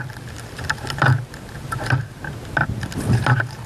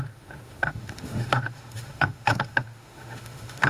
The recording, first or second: first